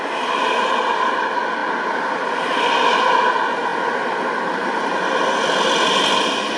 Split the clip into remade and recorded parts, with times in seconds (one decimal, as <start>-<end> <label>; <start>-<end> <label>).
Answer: 0.0-6.6 recorded